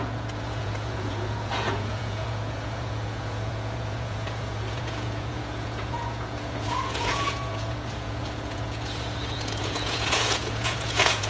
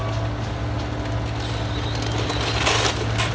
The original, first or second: second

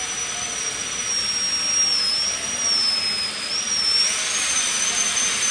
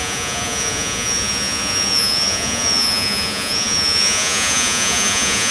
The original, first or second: first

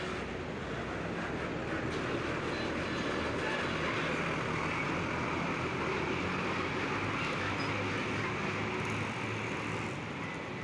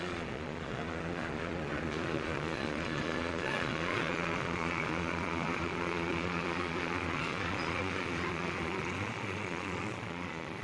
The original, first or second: first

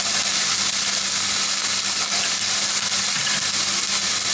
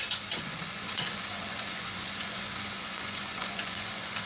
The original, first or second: first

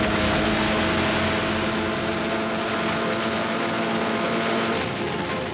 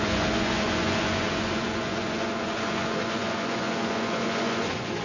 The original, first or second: first